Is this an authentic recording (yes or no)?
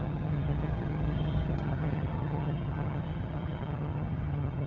no